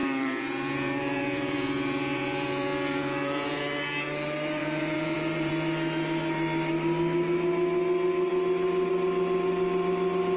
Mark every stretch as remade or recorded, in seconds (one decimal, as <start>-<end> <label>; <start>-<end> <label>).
0.0-3.6 remade; 3.6-4.6 recorded; 4.6-5.5 remade; 5.5-10.4 recorded